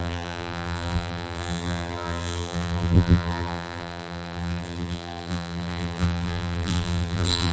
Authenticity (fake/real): fake